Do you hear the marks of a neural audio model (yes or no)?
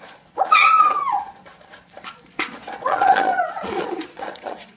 yes